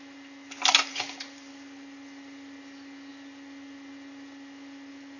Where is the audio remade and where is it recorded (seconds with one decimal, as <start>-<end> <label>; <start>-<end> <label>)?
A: 0.0-0.9 recorded; 0.9-1.5 remade; 1.5-5.2 recorded